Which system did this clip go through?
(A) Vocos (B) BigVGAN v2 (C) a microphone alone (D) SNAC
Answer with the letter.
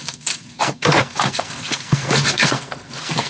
D